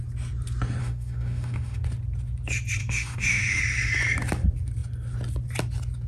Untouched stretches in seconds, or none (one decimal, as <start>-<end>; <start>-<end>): 0.0-0.8; 1.8-2.8; 3.6-6.1